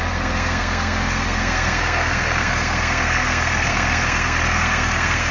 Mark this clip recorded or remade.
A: remade